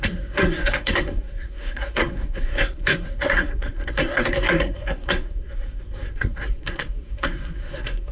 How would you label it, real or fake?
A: fake